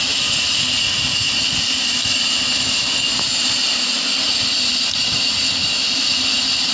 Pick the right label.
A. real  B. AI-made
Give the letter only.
A